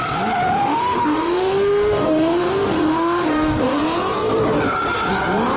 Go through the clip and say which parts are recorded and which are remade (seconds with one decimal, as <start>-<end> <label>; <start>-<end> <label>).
0.0-0.4 recorded; 0.4-3.8 remade; 3.8-5.6 recorded